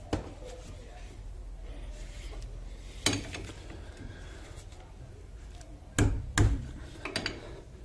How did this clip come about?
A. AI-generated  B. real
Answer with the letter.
B